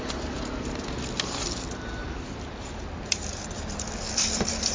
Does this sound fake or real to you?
fake